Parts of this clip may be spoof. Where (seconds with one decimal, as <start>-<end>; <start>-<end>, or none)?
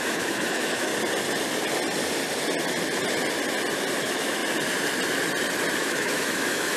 0.0-0.9; 4.0-4.4; 5.8-6.8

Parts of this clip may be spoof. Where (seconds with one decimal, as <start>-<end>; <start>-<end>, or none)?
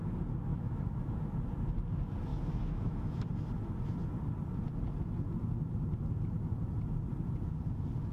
0.5-1.0; 2.3-3.2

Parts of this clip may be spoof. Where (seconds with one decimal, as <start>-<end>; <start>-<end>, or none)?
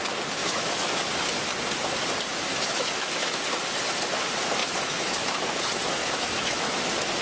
0.4-1.0; 2.5-3.4; 4.6-5.6; 6.0-6.8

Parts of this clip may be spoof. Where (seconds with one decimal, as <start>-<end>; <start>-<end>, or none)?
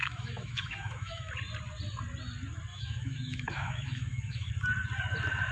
0.0-1.3; 2.7-4.5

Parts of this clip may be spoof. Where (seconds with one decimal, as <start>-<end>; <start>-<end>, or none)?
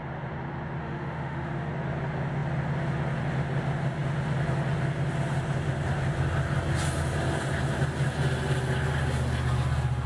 0.8-1.7